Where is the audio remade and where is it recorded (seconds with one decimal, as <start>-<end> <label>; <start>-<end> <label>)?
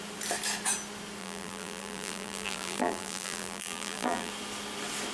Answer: 0.0-1.2 recorded; 1.2-4.3 remade; 4.3-5.1 recorded